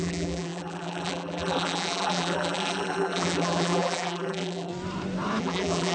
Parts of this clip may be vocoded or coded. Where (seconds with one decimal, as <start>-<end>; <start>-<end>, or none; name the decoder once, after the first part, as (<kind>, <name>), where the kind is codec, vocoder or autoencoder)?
0.0-4.7 (vocoder, BigVGAN v2); 5.4-5.9